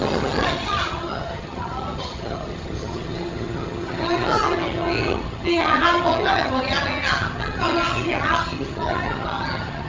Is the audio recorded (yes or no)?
no